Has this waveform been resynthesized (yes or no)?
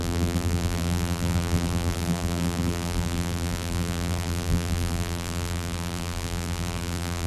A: yes